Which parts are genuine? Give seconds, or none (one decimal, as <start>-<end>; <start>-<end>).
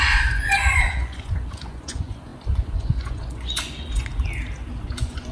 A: 4.1-4.8